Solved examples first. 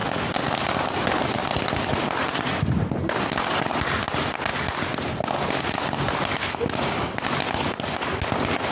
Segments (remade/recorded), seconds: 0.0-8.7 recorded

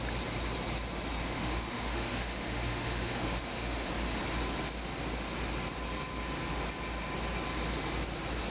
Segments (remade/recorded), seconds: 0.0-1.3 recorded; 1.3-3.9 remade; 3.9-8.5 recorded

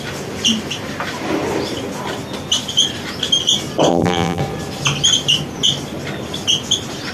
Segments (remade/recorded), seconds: 0.0-3.9 recorded; 3.9-4.4 remade; 4.4-7.1 recorded

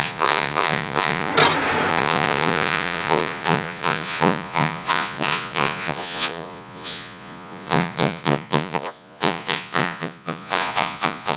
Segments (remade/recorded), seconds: 0.0-1.3 remade; 1.3-1.9 recorded; 1.9-11.4 remade

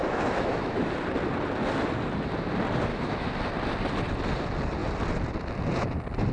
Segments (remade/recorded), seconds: 0.0-0.9 remade; 0.9-2.9 recorded; 2.9-3.4 remade; 3.4-6.3 recorded

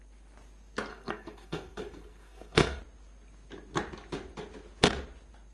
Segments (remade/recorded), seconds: 0.0-0.9 recorded; 0.9-2.8 remade; 2.8-5.5 recorded